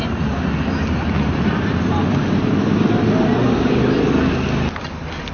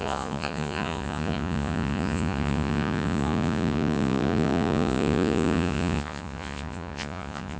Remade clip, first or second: second